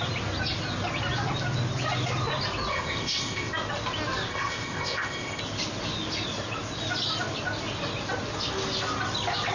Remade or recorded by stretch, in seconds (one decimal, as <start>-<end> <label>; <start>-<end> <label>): 0.0-2.7 recorded; 2.7-3.5 remade; 3.5-4.3 recorded; 4.3-5.4 remade; 5.4-9.5 recorded